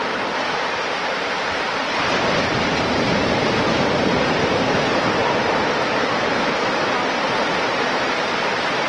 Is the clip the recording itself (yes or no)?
no